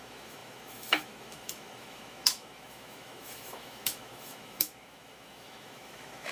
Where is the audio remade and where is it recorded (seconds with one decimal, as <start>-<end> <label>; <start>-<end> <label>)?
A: 0.0-6.3 remade